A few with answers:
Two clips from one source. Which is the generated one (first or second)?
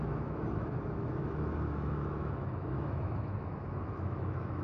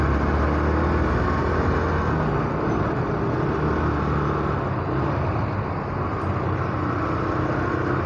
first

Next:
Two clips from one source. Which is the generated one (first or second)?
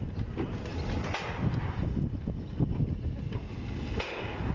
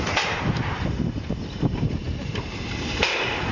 second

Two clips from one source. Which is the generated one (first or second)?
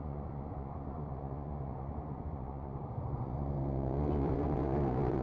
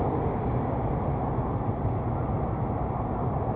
first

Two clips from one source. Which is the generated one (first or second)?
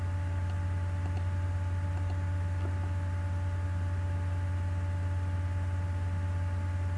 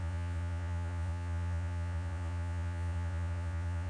second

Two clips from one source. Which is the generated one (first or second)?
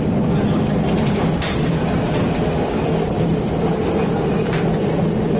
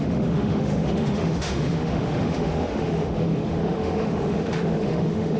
second